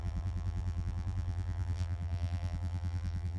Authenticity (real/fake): fake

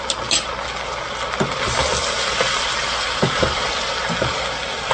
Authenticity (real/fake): real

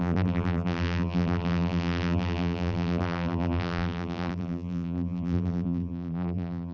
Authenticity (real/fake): fake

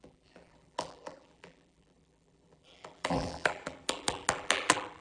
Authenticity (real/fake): fake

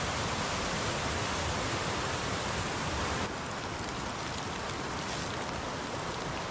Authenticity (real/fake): fake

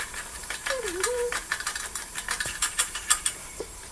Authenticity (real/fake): fake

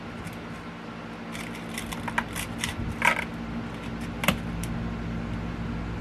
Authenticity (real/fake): real